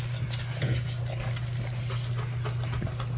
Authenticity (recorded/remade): recorded